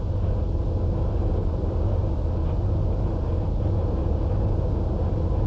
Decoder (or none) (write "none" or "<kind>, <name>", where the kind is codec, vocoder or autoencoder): none